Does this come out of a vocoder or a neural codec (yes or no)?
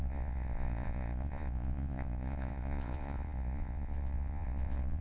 yes